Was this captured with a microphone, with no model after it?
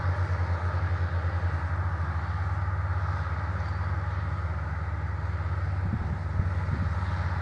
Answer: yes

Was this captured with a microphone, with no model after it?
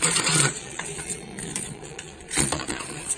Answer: no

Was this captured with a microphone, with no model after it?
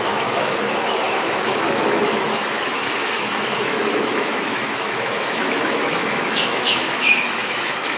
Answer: no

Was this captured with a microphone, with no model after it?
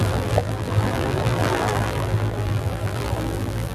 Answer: no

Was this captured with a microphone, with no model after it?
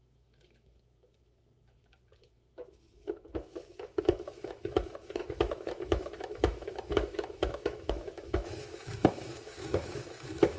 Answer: no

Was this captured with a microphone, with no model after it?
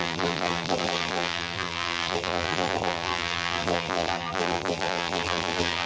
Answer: no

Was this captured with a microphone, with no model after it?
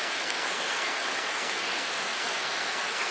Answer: no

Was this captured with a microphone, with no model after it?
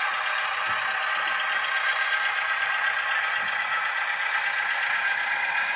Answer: yes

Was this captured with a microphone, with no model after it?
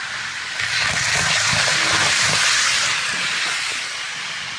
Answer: yes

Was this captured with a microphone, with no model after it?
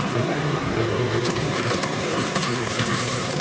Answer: no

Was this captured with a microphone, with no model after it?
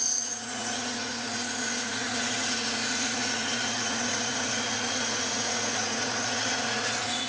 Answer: no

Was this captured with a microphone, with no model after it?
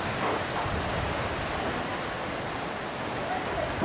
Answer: no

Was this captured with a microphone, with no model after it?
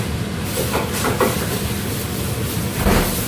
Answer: yes